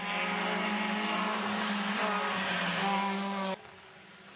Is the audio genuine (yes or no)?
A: yes